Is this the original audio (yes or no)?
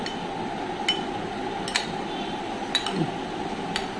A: yes